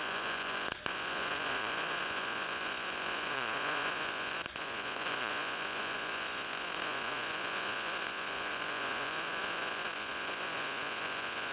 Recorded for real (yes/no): no